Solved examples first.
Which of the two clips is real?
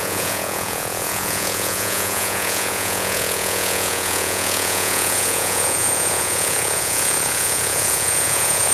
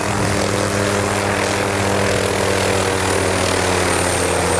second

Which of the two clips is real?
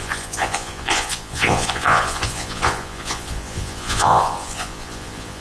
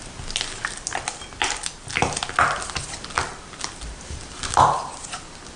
second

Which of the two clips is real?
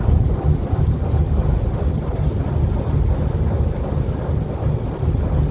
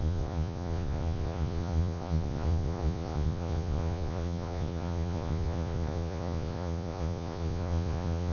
first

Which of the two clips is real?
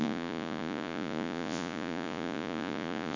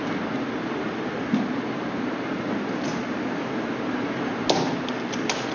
second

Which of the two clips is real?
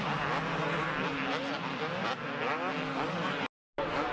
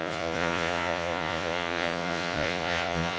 first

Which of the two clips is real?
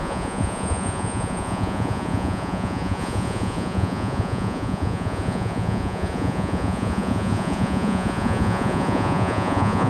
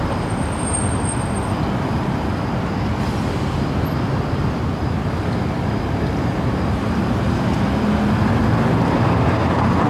second